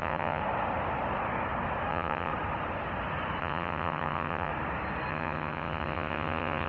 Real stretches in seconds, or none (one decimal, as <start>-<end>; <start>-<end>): 0.4-1.9; 2.3-3.4; 4.5-5.1

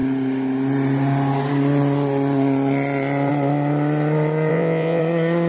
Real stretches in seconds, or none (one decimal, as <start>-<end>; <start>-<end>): 0.0-4.5; 5.0-5.5

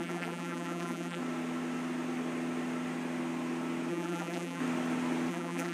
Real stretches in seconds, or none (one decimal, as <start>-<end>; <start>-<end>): 1.2-3.9; 4.6-5.3